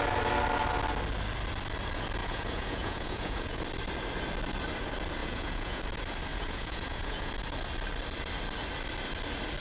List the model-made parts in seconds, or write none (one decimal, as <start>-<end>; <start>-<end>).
2.2-3.6; 5.2-5.8; 6.3-7.3